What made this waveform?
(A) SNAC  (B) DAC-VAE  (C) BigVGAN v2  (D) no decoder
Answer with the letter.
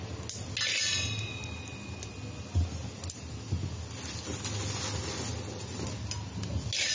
D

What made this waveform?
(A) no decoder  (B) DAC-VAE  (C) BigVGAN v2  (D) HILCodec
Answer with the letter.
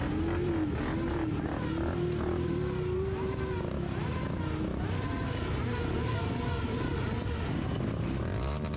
A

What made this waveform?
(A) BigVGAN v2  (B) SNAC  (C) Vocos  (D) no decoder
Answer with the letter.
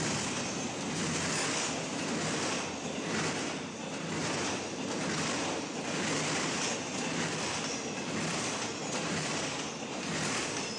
D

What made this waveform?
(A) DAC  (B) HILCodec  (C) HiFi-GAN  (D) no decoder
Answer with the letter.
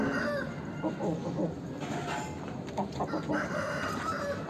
D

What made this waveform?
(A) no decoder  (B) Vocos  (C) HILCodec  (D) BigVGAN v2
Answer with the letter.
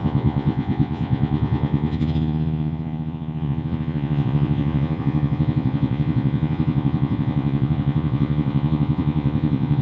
B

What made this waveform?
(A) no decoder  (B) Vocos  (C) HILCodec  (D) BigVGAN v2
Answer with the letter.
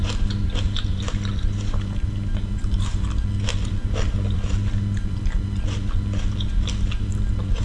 A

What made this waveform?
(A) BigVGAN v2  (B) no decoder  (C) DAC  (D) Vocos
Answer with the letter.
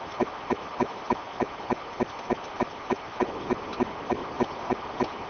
A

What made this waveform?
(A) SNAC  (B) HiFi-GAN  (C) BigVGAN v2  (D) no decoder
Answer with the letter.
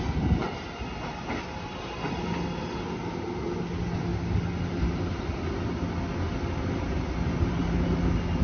D